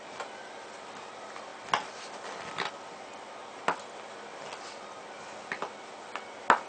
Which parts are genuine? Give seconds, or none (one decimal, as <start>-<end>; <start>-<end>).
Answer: 0.0-6.7